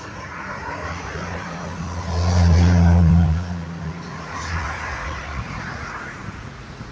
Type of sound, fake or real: fake